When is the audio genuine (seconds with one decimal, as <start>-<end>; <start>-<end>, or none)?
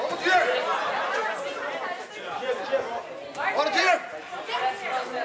0.0-5.2